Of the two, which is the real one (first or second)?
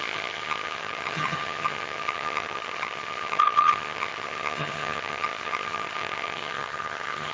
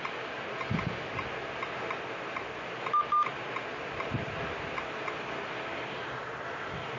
second